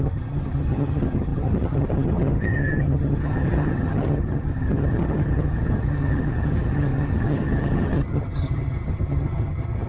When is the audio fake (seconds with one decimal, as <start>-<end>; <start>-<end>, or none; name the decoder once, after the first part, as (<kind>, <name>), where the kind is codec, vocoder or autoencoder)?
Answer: 0.0-9.9 (vocoder, HiFi-GAN)